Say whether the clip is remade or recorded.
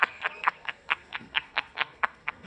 remade